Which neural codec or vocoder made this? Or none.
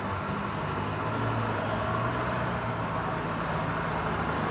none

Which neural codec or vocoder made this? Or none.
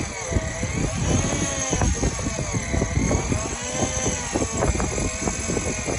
none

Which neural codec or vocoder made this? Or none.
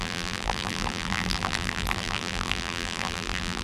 vocoder, BigVGAN v2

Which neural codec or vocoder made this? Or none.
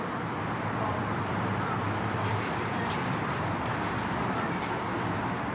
vocoder, BigVGAN v2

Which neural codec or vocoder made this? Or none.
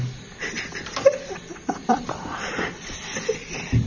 vocoder, BigVGAN v2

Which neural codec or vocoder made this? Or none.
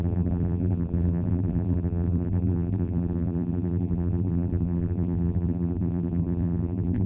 vocoder, BigVGAN v2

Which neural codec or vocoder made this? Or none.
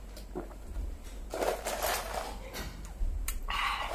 vocoder, BigVGAN v2